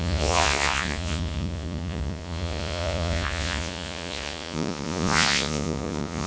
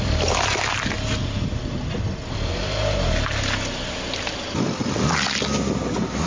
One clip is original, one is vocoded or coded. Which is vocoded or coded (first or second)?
first